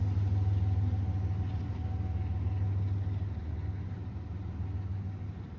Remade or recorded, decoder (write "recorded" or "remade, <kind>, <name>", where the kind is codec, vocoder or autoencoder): recorded